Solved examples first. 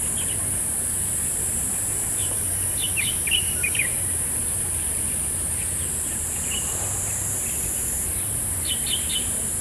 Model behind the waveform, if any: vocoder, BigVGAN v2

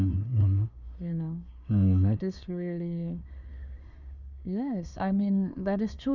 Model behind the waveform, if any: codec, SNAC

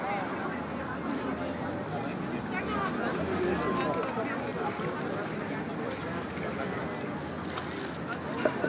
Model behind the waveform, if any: none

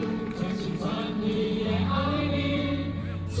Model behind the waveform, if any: vocoder, BigVGAN v2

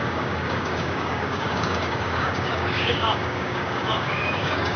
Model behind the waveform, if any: codec, DAC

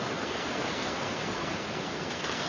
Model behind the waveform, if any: codec, SNAC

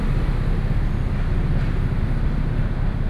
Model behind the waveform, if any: none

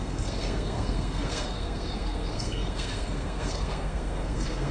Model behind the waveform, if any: codec, SNAC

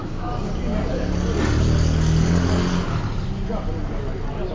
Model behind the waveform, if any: none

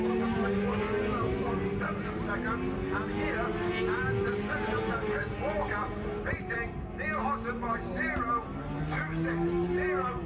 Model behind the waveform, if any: none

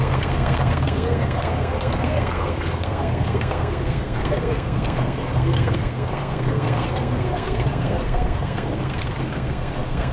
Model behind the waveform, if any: codec, SNAC